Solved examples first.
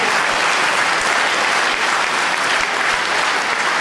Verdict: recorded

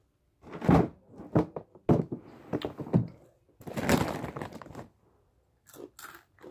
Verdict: recorded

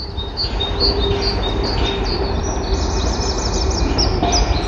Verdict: recorded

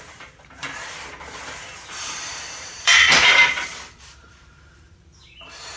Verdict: remade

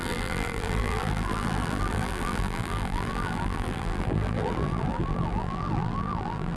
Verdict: remade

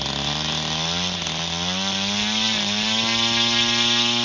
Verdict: recorded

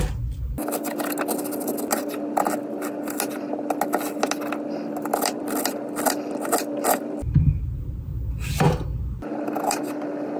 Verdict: recorded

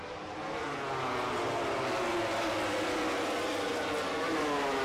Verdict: recorded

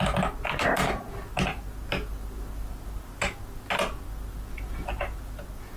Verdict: recorded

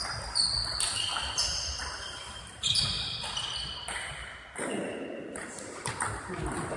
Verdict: remade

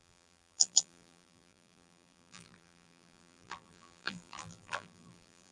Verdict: remade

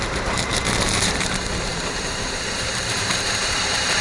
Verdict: remade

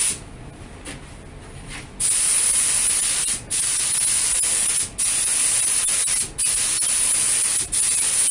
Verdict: recorded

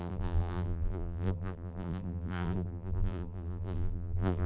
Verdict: remade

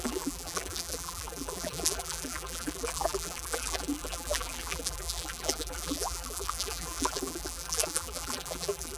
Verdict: remade